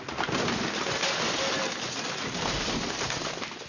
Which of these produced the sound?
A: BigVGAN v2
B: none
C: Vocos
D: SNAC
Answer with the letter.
B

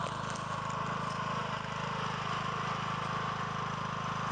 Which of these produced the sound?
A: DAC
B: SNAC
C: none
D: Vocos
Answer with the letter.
C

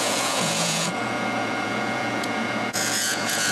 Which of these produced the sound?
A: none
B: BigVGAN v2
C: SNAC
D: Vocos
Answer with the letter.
D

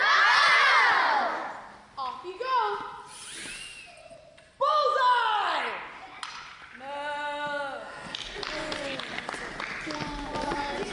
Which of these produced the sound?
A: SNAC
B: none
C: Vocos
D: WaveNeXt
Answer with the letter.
B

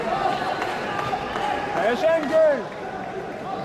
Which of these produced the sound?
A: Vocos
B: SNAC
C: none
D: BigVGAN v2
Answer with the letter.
C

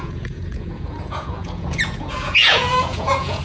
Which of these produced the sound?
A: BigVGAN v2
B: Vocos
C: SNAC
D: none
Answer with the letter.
B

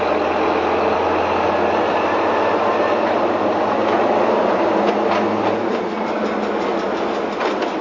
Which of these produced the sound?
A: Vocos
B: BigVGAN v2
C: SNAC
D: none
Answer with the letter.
D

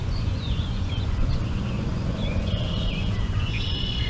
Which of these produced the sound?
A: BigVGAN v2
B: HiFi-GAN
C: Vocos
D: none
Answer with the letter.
C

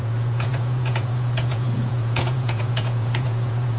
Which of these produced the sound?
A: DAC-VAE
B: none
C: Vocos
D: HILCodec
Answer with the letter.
C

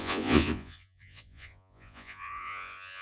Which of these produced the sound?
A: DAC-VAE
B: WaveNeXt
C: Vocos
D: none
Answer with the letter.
C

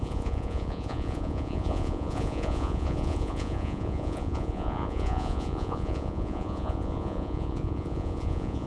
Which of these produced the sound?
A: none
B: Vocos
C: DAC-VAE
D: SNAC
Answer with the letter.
B